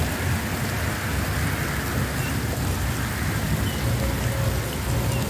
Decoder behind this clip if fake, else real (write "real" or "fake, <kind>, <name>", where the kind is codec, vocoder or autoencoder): real